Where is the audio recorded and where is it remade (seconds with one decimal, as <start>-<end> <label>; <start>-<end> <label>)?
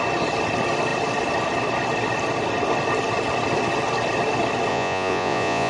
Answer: 0.0-4.7 recorded; 4.7-5.7 remade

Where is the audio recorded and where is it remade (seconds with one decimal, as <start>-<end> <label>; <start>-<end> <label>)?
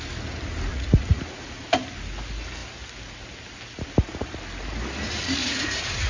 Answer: 0.0-0.7 recorded; 0.7-1.2 remade; 1.2-5.4 recorded; 5.4-6.1 remade